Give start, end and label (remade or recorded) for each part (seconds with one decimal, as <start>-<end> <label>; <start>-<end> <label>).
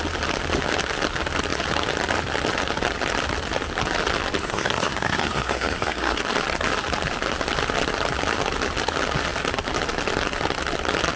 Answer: 0.0-4.4 recorded; 4.4-6.2 remade; 6.2-11.2 recorded